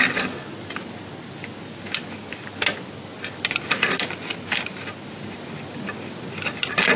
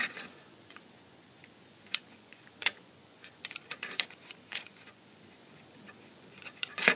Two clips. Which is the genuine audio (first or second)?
first